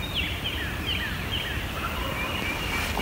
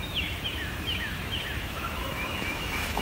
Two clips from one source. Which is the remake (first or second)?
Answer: second